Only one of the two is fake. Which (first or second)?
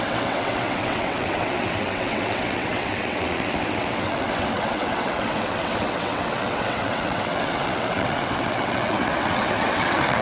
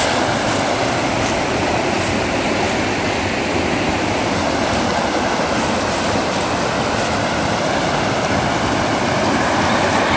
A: first